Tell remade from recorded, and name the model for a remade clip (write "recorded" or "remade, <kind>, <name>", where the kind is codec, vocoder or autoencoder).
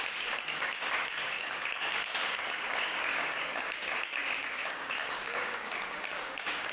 remade, codec, DAC